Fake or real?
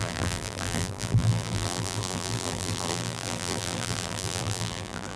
fake